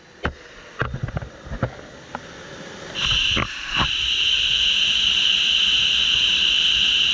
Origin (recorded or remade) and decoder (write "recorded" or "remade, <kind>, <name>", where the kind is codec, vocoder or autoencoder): recorded